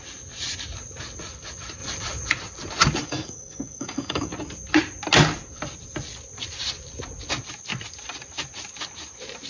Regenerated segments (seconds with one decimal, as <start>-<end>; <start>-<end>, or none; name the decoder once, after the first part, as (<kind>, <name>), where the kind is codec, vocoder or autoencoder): 3.0-4.3 (codec, DAC)